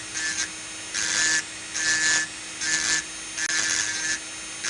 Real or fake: real